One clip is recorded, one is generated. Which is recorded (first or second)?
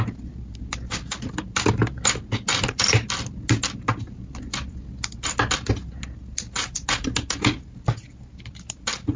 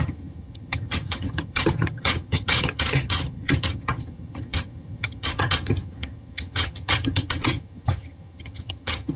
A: first